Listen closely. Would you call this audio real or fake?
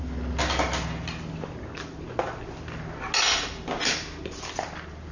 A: real